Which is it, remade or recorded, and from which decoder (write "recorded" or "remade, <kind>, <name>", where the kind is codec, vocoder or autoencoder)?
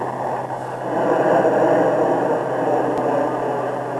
recorded